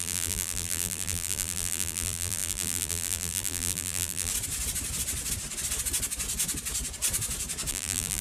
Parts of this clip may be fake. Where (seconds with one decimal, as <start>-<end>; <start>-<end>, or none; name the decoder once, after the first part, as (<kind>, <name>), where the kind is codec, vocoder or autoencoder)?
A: 0.0-4.3 (vocoder, BigVGAN v2); 7.7-8.2